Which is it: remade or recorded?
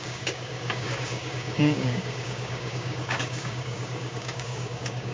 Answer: remade